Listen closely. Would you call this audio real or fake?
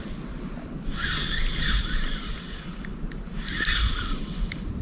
real